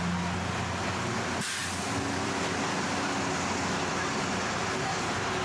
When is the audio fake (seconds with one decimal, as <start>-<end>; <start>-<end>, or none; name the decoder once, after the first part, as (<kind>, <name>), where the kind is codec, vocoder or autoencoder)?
none